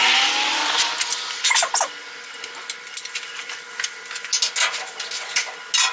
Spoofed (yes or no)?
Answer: no